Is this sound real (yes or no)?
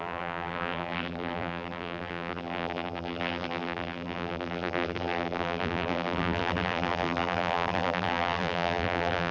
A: no